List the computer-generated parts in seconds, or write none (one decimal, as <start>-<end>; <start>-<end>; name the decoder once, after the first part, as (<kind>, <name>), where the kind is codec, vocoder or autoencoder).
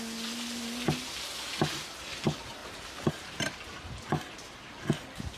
none